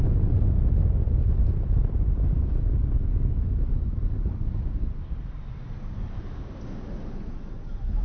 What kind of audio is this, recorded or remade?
recorded